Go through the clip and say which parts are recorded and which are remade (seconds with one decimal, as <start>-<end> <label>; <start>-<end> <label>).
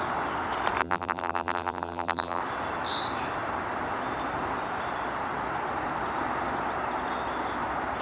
0.0-0.8 recorded; 0.8-2.4 remade; 2.4-8.0 recorded